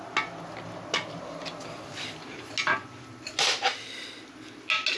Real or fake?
real